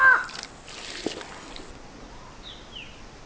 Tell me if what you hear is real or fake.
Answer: real